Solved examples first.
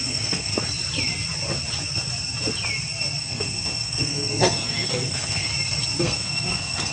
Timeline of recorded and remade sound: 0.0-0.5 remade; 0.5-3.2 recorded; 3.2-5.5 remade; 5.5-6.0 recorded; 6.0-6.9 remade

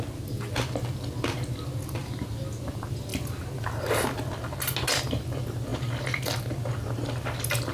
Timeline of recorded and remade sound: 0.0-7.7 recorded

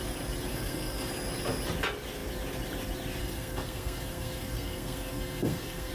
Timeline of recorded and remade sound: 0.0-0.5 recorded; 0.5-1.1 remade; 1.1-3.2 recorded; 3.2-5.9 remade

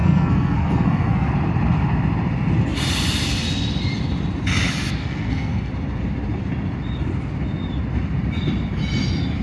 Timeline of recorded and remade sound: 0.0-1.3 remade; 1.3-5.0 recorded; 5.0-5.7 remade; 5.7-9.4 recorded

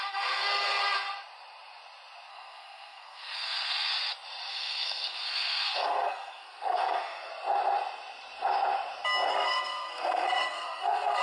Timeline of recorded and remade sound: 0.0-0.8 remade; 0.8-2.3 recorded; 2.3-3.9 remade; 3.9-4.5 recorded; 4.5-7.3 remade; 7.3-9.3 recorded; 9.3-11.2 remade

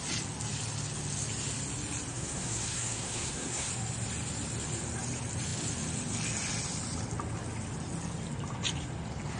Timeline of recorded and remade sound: 0.0-2.1 recorded; 2.1-3.7 remade; 3.7-9.4 recorded

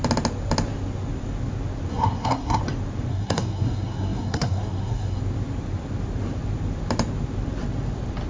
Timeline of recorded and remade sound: 0.0-1.9 recorded; 1.9-2.6 remade; 2.6-3.1 recorded; 3.1-5.2 remade; 5.2-8.3 recorded